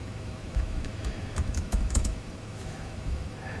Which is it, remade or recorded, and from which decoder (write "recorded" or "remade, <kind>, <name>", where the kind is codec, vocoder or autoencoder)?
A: remade, autoencoder, DAC-VAE